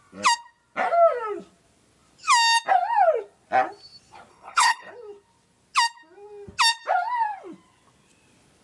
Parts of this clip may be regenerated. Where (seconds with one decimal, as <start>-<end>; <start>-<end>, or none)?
4.3-4.9

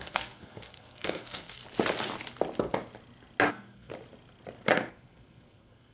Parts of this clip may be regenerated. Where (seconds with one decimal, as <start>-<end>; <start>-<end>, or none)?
0.0-1.6; 3.5-3.9; 4.9-5.9

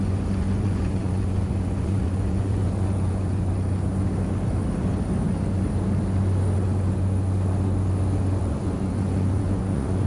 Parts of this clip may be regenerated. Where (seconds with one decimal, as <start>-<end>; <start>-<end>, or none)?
0.0-3.5; 8.4-10.1

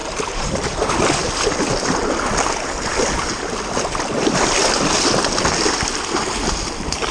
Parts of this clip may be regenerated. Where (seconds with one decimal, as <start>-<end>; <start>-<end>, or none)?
0.0-0.9

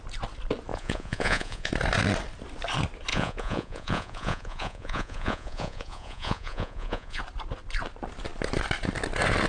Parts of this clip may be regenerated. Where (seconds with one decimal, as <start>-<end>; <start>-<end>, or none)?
0.7-1.7; 3.1-7.2

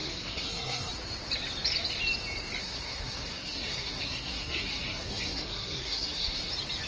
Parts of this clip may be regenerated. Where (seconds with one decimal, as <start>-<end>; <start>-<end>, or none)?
0.0-0.9; 2.6-6.5

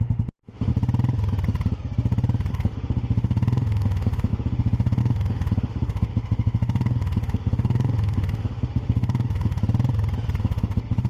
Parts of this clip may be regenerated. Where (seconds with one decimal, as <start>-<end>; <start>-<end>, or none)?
0.0-0.7; 2.5-9.6; 10.4-11.1